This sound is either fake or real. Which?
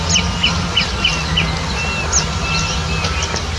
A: real